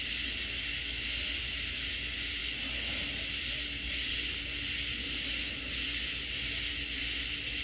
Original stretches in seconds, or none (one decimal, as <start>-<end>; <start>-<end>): 0.0-7.6